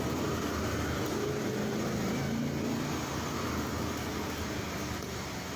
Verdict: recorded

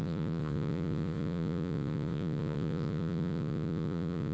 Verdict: remade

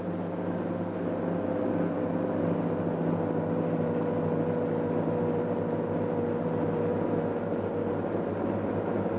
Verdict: recorded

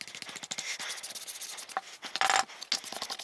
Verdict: recorded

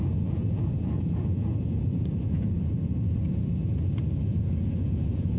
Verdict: remade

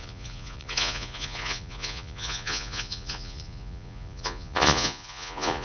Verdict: remade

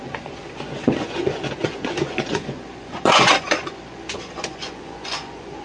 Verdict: remade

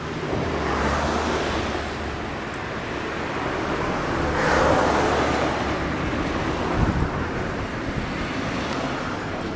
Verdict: recorded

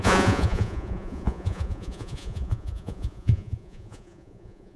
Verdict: remade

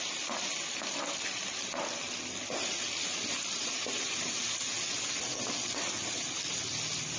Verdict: recorded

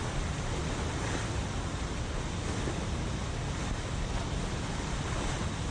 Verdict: recorded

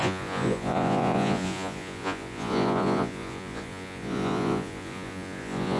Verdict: remade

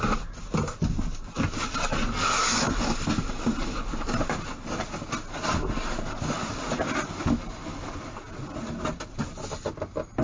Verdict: recorded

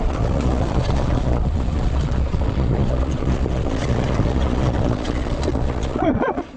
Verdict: remade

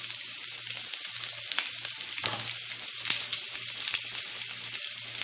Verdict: recorded